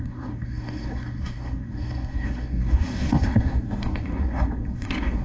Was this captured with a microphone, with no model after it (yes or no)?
no